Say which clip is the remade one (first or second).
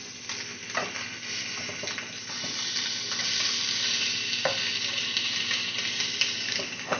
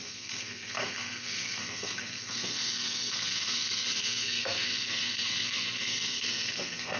second